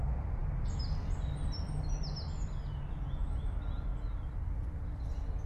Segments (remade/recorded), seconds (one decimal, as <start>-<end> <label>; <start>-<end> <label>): 0.0-5.5 recorded